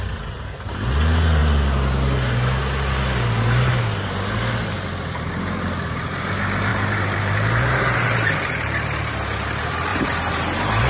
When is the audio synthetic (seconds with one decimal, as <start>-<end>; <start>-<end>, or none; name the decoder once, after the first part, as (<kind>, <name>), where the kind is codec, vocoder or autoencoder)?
6.7-9.1 (vocoder, BigVGAN v2); 9.9-10.9